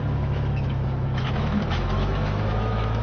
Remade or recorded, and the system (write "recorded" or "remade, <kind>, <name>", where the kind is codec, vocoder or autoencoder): remade, autoencoder, DAC-VAE